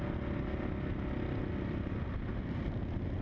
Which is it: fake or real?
real